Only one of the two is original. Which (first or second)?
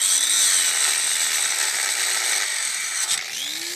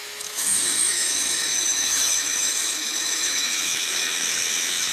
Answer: first